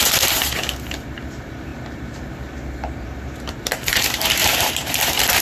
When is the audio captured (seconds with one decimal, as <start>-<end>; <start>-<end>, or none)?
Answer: none